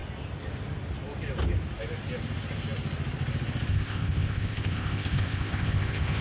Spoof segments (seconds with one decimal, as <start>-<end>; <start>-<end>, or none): 3.7-6.2